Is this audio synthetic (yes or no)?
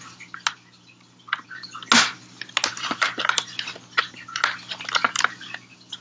no